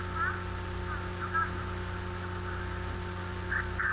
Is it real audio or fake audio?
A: real